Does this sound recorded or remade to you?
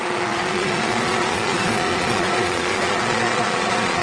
remade